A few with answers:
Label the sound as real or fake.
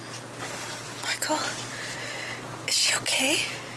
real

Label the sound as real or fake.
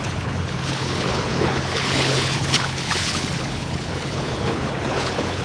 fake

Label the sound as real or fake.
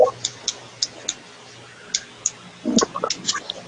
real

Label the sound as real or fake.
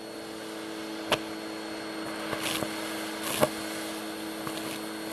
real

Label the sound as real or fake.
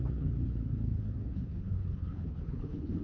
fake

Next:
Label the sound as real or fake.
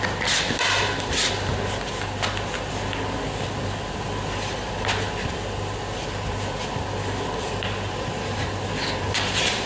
real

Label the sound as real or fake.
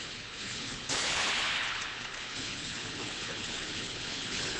fake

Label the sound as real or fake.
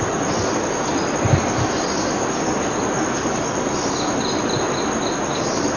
real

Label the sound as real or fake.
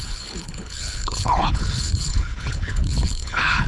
fake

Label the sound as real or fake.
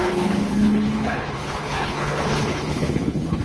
fake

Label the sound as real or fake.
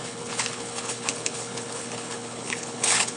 fake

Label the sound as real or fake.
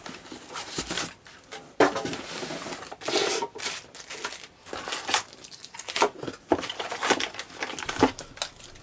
real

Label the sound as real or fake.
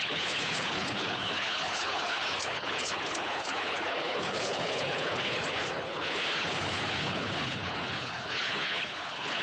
fake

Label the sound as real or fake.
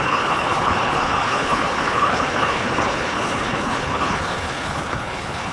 fake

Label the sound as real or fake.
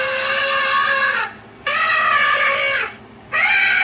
real